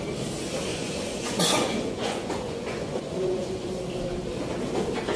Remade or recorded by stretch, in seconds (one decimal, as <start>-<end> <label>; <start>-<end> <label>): 0.0-0.7 recorded; 0.7-3.8 remade; 3.8-5.2 recorded

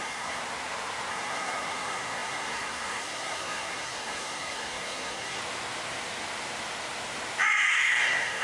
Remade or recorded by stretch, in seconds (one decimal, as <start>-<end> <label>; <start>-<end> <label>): 0.0-0.4 remade; 0.4-1.1 recorded; 1.1-5.4 remade; 5.4-7.7 recorded; 7.7-8.4 remade

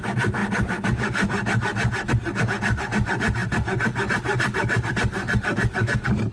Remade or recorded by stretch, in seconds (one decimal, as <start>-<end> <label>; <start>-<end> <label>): 0.0-6.3 recorded